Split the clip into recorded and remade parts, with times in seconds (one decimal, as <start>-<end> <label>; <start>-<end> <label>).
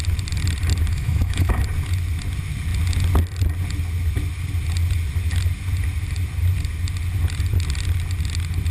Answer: 0.0-0.9 recorded; 0.9-1.6 remade; 1.6-8.7 recorded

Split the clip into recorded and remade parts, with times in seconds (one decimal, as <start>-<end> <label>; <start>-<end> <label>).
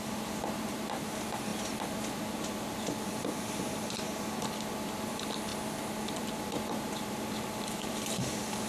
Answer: 0.0-8.7 recorded